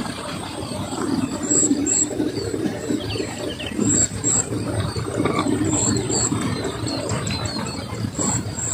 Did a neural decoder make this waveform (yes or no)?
yes